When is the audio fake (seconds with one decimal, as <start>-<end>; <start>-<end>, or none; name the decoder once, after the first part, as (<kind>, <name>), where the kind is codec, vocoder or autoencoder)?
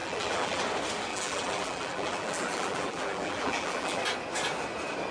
0.0-0.6 (vocoder, BigVGAN v2); 1.1-4.0